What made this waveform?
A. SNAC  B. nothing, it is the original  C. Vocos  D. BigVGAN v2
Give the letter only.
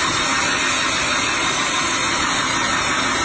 B